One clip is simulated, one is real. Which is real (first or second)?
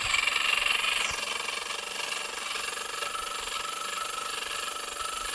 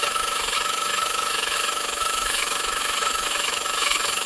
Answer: first